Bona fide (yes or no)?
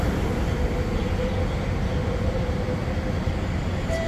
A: yes